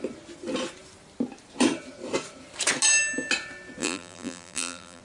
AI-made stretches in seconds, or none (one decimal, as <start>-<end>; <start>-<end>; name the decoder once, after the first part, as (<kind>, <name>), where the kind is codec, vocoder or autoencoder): 3.8-5.0 (vocoder, BigVGAN v2)